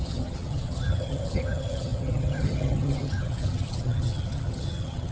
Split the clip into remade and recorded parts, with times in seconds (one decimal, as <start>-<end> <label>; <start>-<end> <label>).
0.0-5.1 remade